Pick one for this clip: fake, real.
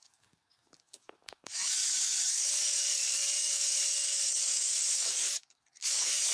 fake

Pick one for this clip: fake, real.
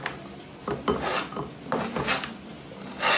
real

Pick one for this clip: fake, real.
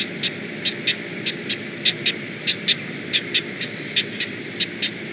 real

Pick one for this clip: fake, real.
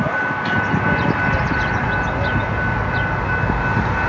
real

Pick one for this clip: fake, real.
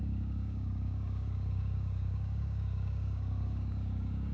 fake